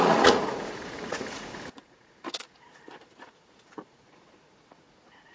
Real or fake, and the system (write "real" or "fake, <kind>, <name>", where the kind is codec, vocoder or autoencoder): fake, vocoder, Vocos